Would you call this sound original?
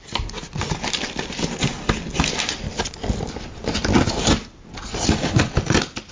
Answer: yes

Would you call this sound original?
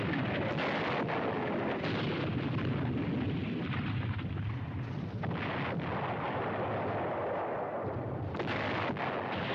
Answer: yes